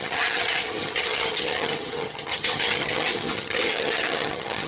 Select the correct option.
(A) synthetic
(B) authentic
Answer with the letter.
A